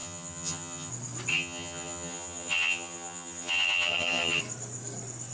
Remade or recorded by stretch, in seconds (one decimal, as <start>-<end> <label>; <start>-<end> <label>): 0.0-0.9 remade; 0.9-1.3 recorded; 1.3-4.4 remade; 4.4-5.3 recorded